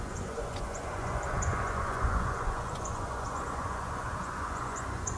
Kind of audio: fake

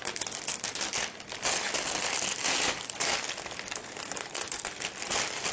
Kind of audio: real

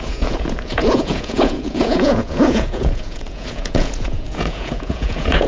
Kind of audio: fake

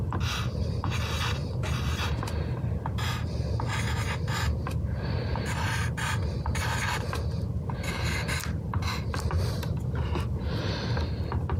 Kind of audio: real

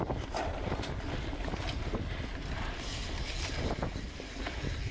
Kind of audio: real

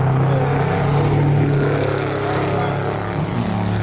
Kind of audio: real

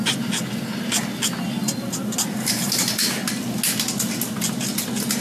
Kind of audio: real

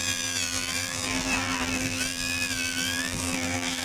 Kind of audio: fake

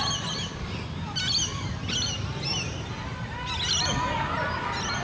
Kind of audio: real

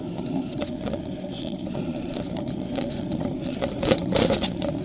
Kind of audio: fake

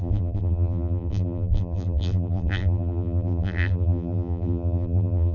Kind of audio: fake